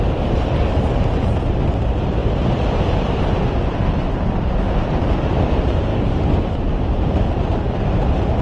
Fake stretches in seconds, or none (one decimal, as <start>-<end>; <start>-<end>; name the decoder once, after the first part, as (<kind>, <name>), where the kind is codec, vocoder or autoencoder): 5.9-6.6 (codec, DAC)